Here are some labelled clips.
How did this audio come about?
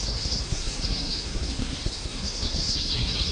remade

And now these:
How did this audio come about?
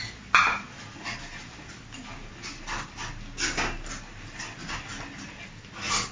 recorded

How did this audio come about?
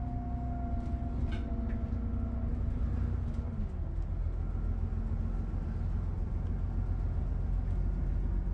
recorded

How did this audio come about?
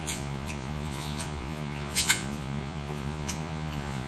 remade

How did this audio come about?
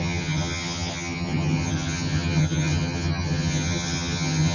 remade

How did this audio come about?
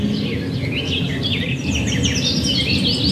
recorded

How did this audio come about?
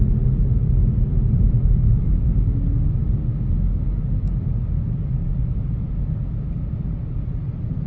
recorded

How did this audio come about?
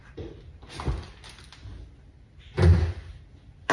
recorded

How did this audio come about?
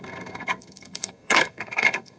remade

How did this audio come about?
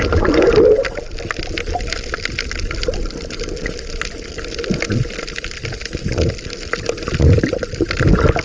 recorded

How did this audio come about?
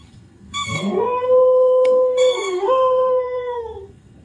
remade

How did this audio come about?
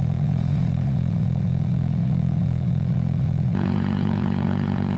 remade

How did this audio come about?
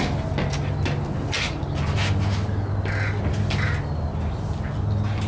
recorded